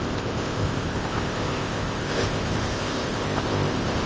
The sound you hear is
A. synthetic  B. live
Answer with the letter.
A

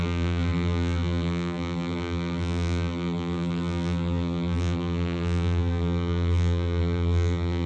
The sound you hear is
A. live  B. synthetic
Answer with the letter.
B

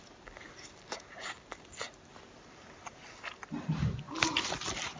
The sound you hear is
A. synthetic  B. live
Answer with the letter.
B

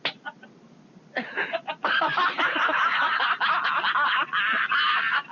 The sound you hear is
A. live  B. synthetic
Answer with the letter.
A